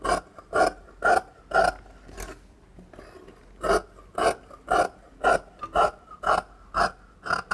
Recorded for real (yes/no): yes